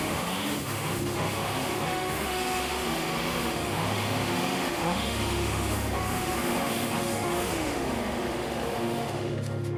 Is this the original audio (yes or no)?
no